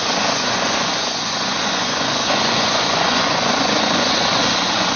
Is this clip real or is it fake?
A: fake